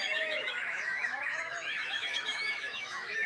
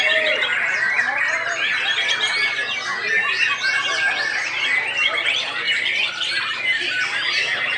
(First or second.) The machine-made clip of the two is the first